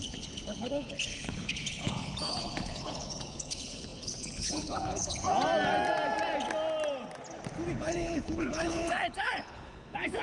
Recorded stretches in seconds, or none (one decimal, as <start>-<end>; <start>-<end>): 5.3-7.7